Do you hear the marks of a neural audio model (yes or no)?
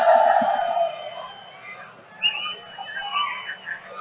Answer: no